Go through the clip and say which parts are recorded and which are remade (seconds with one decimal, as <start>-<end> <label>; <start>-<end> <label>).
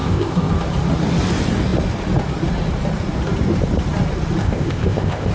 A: 0.0-0.5 remade; 0.5-4.4 recorded; 4.4-5.3 remade